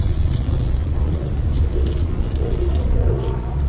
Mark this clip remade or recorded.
remade